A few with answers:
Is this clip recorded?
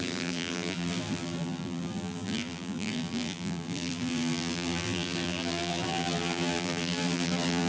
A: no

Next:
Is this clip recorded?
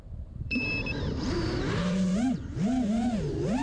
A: no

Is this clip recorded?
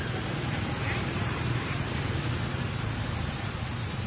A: no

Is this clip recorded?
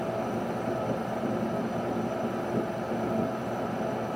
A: yes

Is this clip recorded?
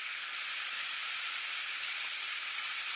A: yes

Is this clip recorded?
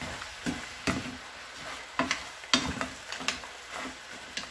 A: yes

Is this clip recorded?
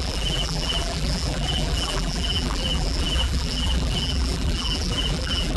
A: no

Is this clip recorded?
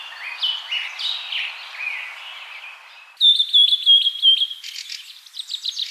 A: yes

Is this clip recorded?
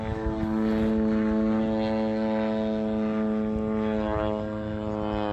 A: yes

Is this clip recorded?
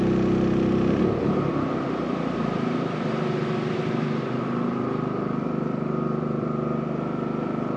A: no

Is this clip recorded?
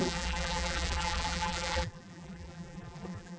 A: no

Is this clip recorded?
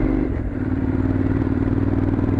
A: no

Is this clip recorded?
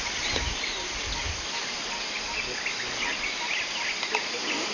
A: yes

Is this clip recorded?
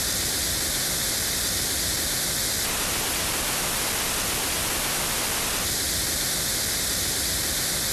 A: yes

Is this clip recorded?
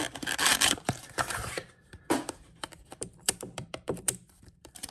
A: no